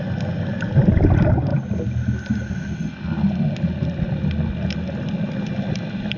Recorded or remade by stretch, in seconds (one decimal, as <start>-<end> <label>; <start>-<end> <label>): 0.0-6.2 recorded